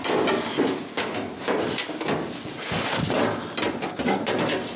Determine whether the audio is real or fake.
real